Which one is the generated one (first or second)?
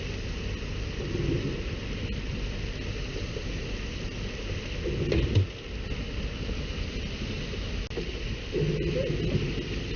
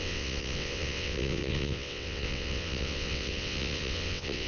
second